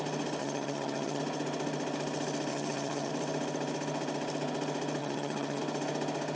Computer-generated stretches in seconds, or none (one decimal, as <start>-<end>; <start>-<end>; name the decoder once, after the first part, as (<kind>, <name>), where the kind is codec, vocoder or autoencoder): 0.4-1.2 (vocoder, HiFi-GAN); 2.5-3.1; 5.0-5.6